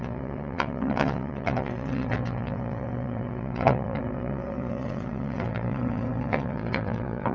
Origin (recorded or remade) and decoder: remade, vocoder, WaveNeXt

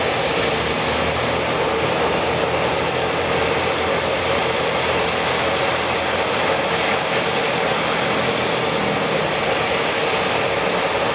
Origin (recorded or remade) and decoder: recorded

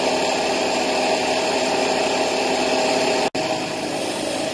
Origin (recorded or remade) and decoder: recorded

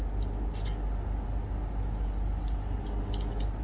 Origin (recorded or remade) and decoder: recorded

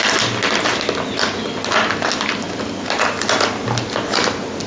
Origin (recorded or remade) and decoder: recorded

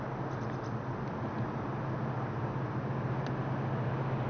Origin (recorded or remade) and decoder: recorded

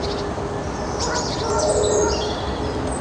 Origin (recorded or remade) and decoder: recorded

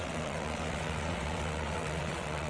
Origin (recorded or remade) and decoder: remade, vocoder, WaveNeXt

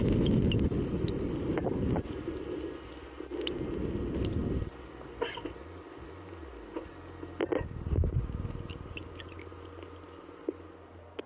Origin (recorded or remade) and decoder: recorded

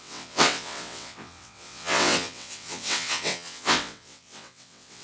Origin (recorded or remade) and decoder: remade, vocoder, WaveNeXt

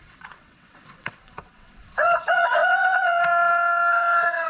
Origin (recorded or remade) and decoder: remade, vocoder, WaveNeXt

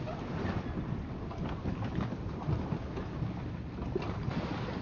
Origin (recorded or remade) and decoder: recorded